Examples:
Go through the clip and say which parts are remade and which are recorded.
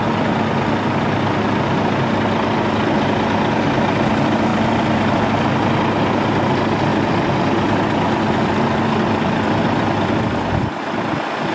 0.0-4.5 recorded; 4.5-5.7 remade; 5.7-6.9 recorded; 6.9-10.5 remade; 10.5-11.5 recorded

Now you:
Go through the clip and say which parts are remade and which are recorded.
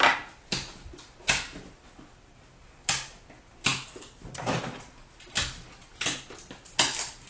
0.0-7.3 recorded